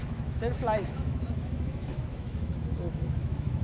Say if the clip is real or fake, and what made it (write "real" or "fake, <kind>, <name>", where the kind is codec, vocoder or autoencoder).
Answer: fake, autoencoder, DAC-VAE